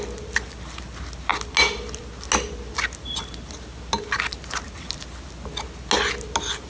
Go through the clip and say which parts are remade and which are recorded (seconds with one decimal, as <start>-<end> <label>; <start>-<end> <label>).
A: 0.0-6.7 recorded